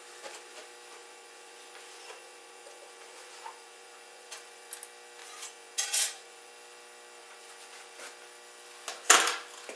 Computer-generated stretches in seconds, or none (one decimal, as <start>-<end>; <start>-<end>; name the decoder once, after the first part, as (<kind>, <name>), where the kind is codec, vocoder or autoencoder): 1.0-4.7 (vocoder, Vocos); 5.2-6.5; 7.2-8.0